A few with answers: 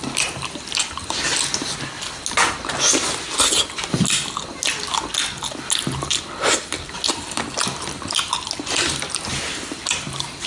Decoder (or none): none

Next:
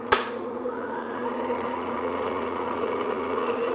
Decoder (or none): vocoder, Vocos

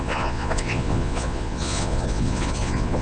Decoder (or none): vocoder, Vocos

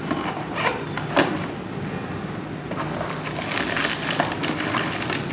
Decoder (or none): none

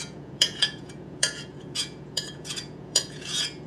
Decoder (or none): vocoder, Vocos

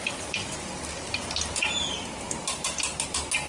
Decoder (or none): none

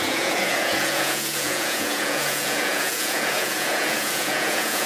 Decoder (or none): vocoder, Vocos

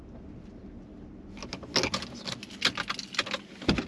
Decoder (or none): none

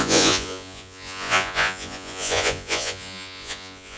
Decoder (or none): vocoder, Vocos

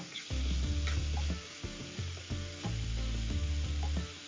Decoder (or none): none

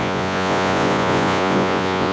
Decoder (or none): vocoder, Vocos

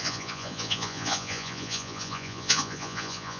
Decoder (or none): vocoder, Vocos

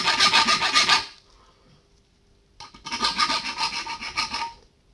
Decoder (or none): none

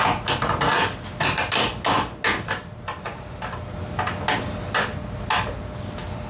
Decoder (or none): none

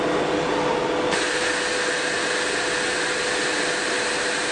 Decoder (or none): none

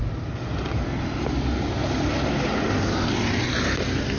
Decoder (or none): none